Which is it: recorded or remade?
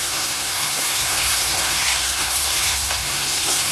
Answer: remade